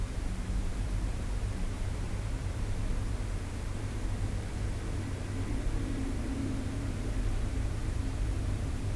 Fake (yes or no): yes